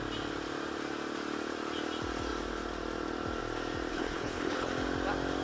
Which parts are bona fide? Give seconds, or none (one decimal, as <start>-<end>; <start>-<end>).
0.0-3.9; 4.7-5.4